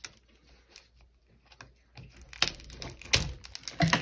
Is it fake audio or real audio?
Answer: real